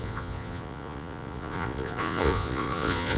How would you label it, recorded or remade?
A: remade